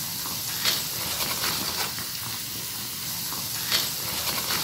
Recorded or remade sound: recorded